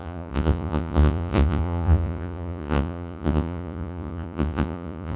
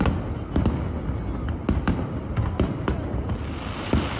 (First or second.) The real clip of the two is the second